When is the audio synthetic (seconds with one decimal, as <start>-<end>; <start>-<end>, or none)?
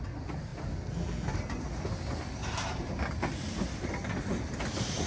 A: none